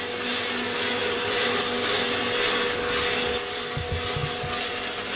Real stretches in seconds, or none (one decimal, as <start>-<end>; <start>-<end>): 0.0-1.0; 1.6-5.2